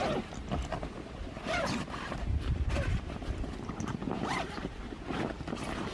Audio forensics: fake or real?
real